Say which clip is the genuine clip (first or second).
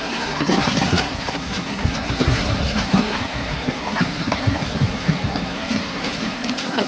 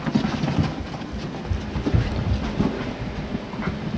second